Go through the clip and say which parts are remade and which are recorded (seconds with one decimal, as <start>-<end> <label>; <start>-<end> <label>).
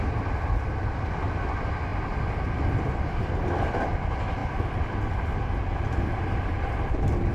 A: 0.0-7.3 recorded